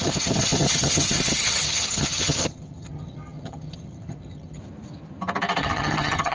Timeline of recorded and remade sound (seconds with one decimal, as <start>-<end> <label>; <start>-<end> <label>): 0.0-4.6 remade; 4.6-5.6 recorded; 5.6-6.3 remade